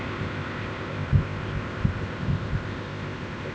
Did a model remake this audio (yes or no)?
yes